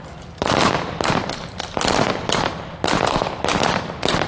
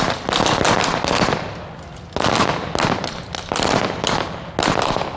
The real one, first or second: second